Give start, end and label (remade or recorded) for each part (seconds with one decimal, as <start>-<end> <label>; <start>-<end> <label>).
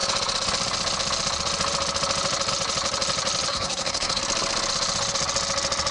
0.0-3.5 recorded; 3.5-4.2 remade; 4.2-5.9 recorded